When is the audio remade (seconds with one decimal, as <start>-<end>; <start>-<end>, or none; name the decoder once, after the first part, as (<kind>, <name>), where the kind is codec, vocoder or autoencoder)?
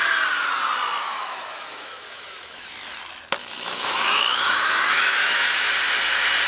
1.0-2.7 (autoencoder, DAC-VAE); 3.4-5.6